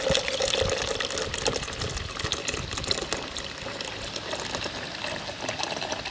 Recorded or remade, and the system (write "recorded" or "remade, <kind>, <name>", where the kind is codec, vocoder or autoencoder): recorded